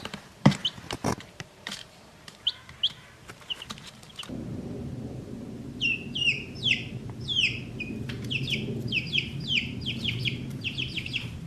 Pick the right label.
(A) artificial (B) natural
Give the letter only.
A